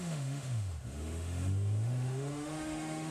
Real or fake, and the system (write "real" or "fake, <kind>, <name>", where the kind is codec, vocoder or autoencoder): fake, autoencoder, DAC-VAE